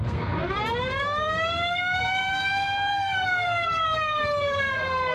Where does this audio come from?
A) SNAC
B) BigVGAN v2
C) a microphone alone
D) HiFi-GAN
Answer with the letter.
A